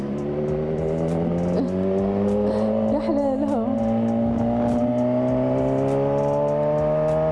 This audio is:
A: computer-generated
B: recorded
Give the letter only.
B